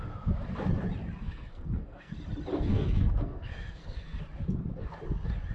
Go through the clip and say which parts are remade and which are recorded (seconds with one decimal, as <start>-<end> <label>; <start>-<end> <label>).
0.0-1.2 recorded; 1.2-2.1 remade; 2.1-2.5 recorded; 2.5-4.2 remade; 4.2-5.5 recorded